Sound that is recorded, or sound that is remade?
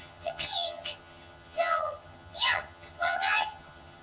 remade